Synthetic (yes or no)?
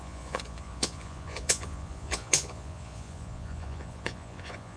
yes